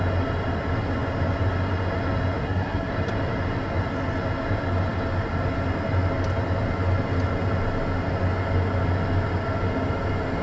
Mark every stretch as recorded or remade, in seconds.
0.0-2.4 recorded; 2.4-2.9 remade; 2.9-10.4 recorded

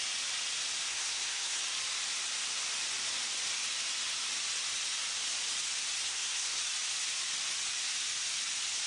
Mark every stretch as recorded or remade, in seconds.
0.0-0.9 recorded; 0.9-1.6 remade; 1.6-6.0 recorded; 6.0-6.6 remade; 6.6-8.9 recorded

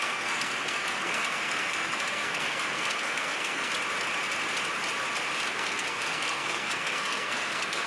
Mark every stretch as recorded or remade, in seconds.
0.0-3.7 remade; 3.7-5.5 recorded; 5.5-7.9 remade

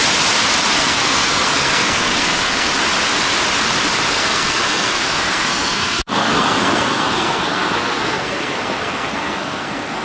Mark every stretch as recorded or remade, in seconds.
0.0-0.7 recorded; 0.7-2.7 remade; 2.7-4.1 recorded; 4.1-10.0 remade

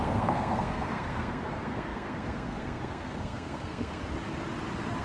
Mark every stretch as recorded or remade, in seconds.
0.0-4.0 remade; 4.0-5.0 recorded

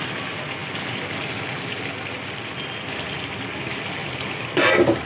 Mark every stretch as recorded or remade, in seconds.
0.0-5.1 recorded

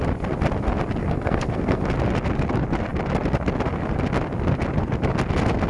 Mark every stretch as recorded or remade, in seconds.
0.0-1.0 recorded; 1.0-1.8 remade; 1.8-5.7 recorded